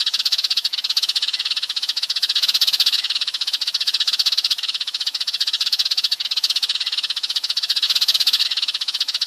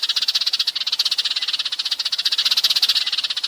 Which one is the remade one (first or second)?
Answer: first